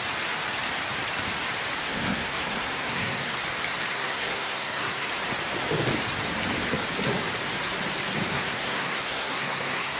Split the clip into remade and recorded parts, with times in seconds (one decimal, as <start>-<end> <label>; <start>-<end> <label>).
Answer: 0.0-1.8 recorded; 1.8-3.3 remade; 3.3-3.9 recorded; 3.9-5.1 remade; 5.1-8.3 recorded; 8.3-10.0 remade